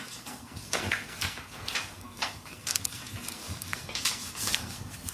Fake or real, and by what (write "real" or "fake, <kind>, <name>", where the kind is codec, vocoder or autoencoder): fake, codec, SNAC